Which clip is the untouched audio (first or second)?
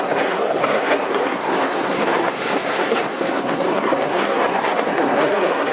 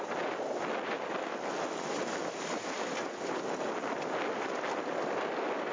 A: second